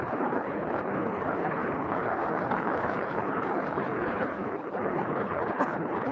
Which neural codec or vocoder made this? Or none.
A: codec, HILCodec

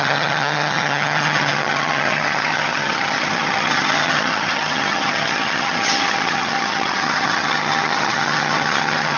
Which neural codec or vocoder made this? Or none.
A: vocoder, HiFi-GAN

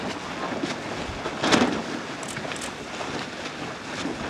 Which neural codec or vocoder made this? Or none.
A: none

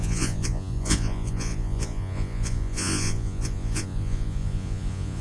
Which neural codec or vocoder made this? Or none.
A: vocoder, Vocos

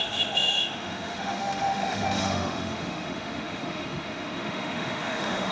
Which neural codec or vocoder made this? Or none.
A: autoencoder, DAC-VAE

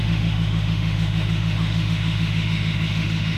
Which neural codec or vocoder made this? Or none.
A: autoencoder, DAC-VAE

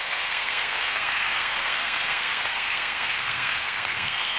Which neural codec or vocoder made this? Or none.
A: codec, SNAC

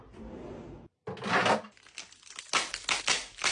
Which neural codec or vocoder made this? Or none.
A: none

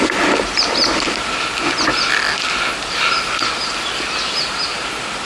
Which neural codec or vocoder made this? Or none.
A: none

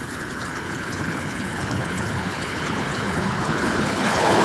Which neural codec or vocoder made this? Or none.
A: codec, HILCodec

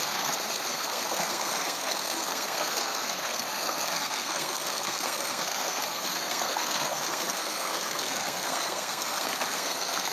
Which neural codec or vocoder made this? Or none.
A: codec, SNAC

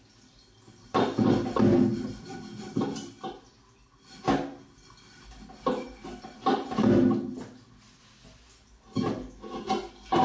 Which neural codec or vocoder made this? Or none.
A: none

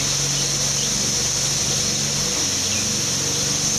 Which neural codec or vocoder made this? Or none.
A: none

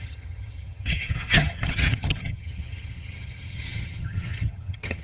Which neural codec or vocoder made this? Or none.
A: vocoder, HiFi-GAN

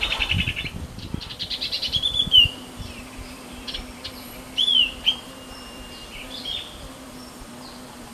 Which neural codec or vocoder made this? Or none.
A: vocoder, BigVGAN v2